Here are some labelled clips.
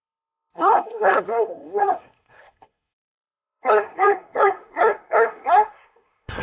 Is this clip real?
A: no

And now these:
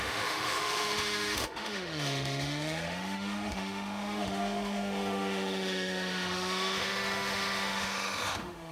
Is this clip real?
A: no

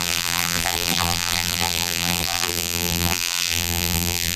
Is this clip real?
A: no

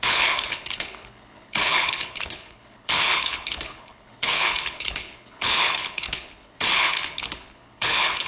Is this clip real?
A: no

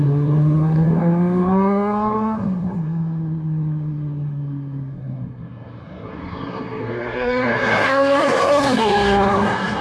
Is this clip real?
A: no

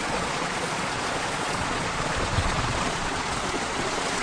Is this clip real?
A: no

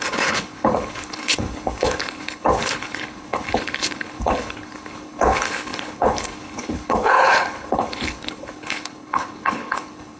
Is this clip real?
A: no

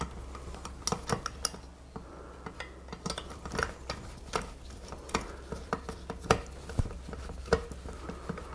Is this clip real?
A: yes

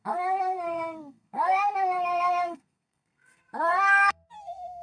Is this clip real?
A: no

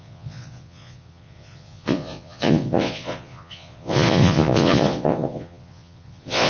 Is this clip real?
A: no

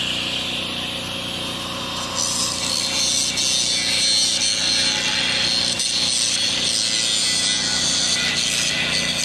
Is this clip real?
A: yes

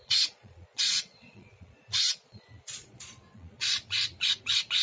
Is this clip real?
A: no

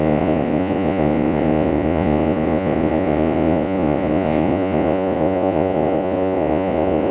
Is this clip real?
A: no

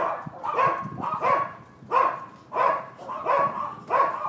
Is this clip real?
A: yes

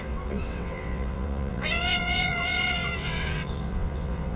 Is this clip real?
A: no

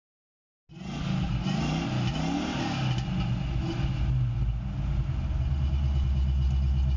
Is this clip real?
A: yes